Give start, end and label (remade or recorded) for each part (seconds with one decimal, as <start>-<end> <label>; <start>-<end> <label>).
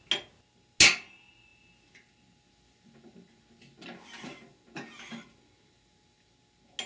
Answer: 0.0-6.9 recorded